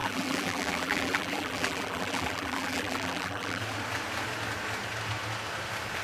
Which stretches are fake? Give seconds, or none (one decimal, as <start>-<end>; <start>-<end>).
0.0-3.6

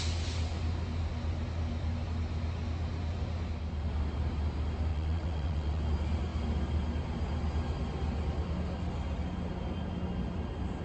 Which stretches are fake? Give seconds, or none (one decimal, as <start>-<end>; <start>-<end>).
4.9-5.8